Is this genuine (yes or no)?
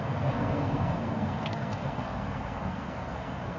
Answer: no